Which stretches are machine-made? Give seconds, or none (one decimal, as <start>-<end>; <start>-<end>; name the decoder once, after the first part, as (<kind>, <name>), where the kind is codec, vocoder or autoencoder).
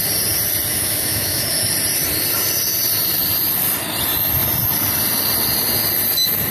0.7-1.6 (autoencoder, DAC-VAE)